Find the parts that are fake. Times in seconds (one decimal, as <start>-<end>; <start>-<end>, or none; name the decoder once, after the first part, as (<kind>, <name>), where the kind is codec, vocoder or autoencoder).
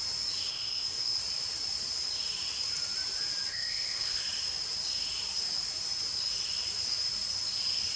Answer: 0.5-1.2 (codec, ZipCodec); 3.5-4.2